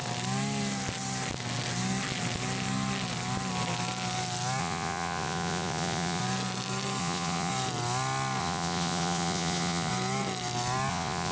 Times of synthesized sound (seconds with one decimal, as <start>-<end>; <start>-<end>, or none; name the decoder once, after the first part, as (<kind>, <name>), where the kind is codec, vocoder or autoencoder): 4.6-6.2 (vocoder, Vocos); 7.0-7.5; 8.4-9.9; 10.9-11.3